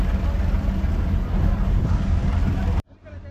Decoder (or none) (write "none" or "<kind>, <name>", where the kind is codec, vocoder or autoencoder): none